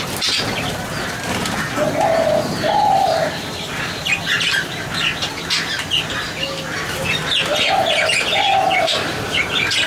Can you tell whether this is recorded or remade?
recorded